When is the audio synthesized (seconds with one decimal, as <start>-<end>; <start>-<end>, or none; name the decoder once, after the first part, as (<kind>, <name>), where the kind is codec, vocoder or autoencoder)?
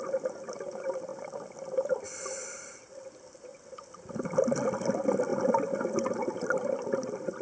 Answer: none